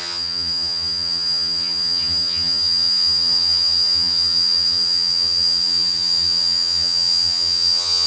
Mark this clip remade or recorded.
remade